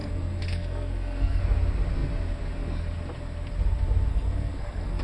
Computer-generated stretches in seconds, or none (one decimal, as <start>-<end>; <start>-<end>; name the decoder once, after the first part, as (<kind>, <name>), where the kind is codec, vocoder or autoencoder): 0.0-1.4 (codec, SNAC); 4.1-5.0